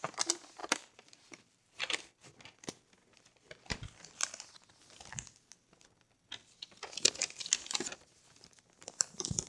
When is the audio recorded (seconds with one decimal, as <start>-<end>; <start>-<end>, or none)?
0.0-0.6; 2.4-7.9; 8.6-9.5